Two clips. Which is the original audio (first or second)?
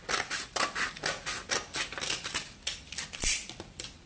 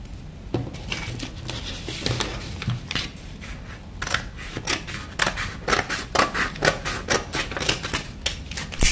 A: second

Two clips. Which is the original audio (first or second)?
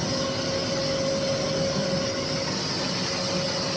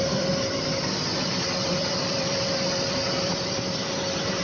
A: first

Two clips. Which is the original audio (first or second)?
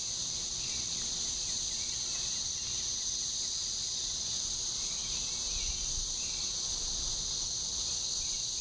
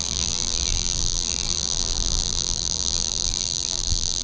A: first